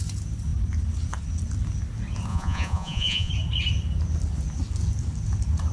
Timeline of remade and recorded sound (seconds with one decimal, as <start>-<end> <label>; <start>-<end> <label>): 0.0-2.3 recorded; 2.3-3.3 remade; 3.3-5.7 recorded